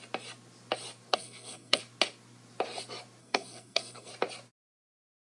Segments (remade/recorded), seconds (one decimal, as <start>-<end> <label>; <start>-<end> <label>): 0.0-1.1 recorded; 1.1-1.8 remade; 1.8-3.2 recorded; 3.2-4.1 remade; 4.1-5.3 recorded